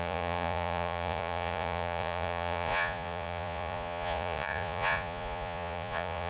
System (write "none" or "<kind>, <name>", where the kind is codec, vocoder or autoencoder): vocoder, Vocos